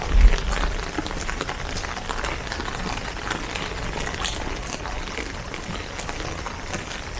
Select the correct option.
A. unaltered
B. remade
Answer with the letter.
A